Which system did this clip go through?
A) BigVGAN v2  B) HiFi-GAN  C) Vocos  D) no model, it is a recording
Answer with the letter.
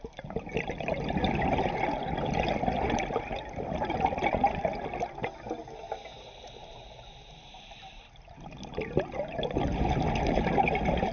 D